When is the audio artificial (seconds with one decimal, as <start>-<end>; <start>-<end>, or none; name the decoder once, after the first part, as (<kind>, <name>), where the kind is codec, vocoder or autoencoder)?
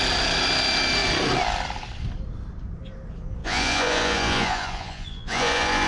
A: 3.4-5.9 (vocoder, Vocos)